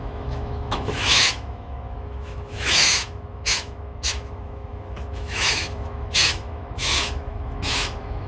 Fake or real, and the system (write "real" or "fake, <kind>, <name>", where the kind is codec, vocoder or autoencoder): fake, autoencoder, DAC-VAE